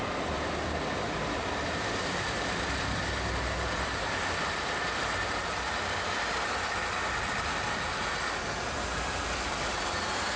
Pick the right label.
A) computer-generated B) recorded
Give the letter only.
A